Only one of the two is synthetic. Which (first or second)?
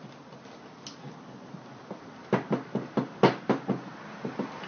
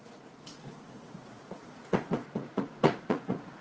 second